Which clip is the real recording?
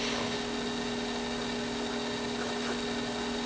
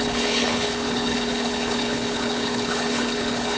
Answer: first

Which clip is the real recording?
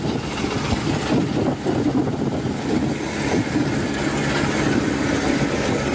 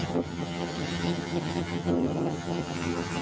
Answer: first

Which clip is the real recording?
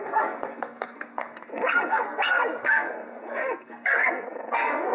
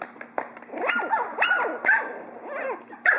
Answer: second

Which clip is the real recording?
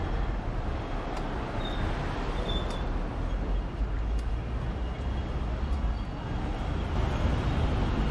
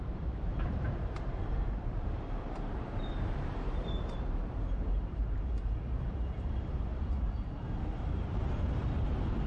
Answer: first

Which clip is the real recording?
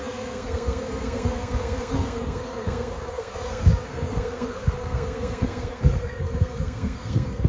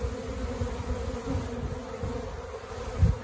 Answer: second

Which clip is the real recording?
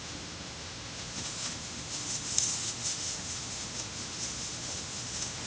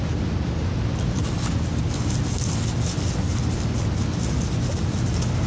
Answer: second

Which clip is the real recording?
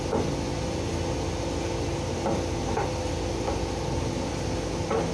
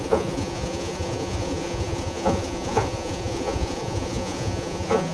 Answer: first